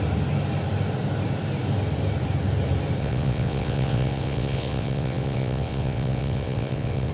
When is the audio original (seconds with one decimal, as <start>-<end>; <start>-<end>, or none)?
0.0-3.0

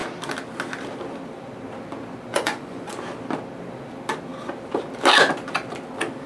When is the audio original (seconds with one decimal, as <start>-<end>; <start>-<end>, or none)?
0.0-2.3; 2.9-6.3

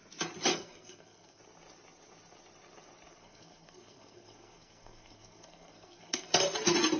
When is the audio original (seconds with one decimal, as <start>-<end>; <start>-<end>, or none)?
0.0-0.5; 1.4-3.2; 6.3-7.0